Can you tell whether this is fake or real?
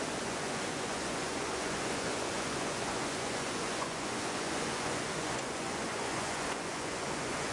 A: fake